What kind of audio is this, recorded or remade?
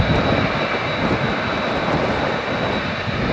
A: recorded